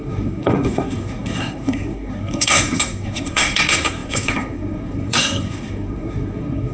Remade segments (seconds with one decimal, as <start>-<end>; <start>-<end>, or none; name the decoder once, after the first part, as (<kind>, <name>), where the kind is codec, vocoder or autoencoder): 0.0-6.7 (codec, SNAC)